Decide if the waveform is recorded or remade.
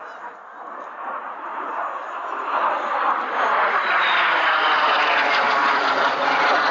recorded